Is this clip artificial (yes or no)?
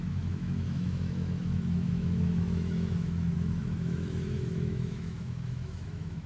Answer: yes